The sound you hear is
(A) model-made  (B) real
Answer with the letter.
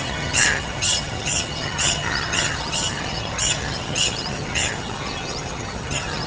A